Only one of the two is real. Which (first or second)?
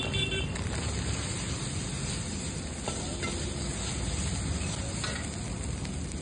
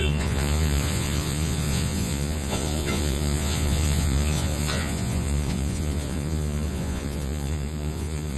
first